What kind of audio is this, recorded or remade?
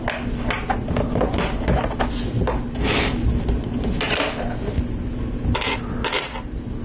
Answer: recorded